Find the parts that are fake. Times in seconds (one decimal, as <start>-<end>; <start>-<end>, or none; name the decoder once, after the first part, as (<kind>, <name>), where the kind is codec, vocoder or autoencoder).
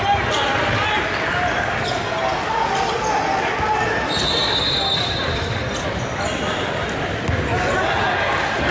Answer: none